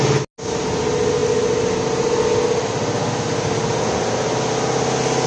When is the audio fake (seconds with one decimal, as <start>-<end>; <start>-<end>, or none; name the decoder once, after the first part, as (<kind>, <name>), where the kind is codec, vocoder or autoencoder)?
none